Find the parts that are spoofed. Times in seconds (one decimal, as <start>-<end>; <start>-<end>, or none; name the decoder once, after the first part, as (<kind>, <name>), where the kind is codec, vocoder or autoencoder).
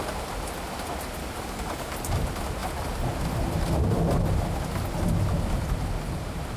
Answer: 1.2-1.9 (codec, DAC)